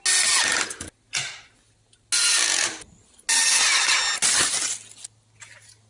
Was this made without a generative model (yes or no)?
yes